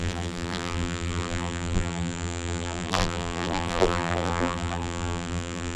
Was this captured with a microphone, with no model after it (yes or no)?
no